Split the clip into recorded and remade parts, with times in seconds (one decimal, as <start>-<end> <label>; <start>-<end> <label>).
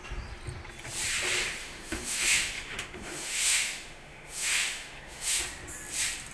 0.0-1.6 recorded; 1.6-5.4 remade; 5.4-6.3 recorded